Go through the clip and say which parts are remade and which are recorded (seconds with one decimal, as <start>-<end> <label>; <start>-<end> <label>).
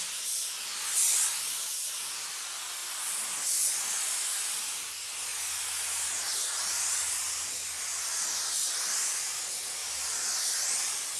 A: 0.0-11.2 recorded